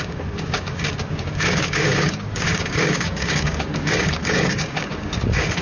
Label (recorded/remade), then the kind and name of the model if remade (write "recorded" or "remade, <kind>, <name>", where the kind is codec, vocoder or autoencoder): remade, codec, DAC